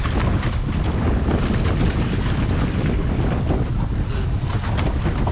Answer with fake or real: real